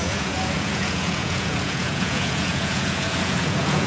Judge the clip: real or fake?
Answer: fake